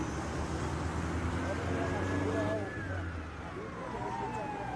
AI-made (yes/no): no